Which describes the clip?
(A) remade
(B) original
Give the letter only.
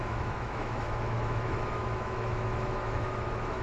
A